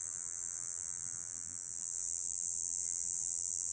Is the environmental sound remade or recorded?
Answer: remade